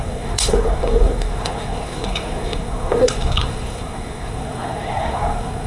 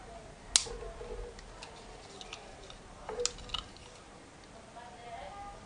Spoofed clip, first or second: first